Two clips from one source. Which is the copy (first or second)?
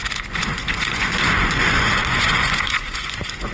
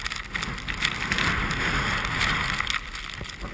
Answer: first